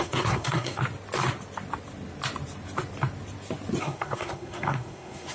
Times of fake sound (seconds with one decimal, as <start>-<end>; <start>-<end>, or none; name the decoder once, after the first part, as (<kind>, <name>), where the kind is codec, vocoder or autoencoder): 0.0-0.8 (codec, SNAC); 3.8-5.3